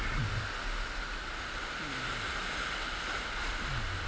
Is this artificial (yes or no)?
no